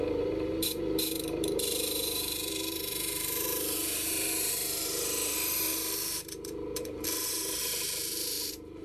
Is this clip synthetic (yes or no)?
yes